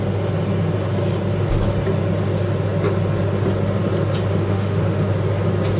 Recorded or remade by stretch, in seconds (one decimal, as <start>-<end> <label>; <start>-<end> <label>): 0.0-4.3 recorded; 4.3-5.1 remade; 5.1-5.8 recorded